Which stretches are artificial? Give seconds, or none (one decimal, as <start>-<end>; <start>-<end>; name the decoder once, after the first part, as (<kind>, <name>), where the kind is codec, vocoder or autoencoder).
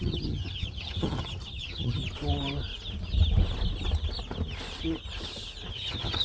0.0-2.0 (vocoder, HiFi-GAN); 5.7-6.2